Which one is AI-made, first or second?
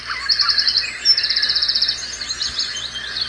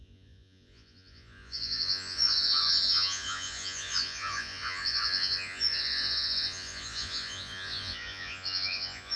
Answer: second